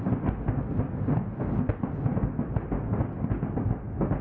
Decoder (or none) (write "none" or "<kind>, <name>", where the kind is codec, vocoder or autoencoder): none